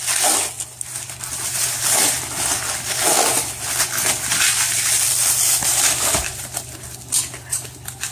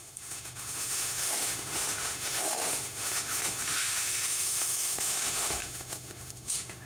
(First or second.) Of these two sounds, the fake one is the second